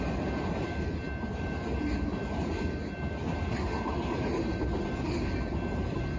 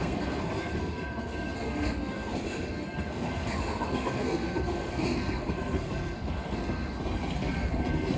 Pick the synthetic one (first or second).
second